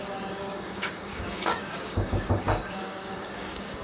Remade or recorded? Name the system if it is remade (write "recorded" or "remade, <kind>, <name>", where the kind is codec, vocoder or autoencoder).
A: remade, codec, DAC